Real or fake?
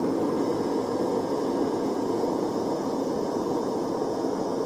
fake